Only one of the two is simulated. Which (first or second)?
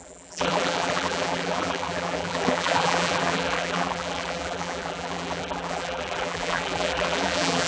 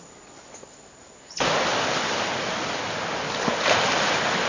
first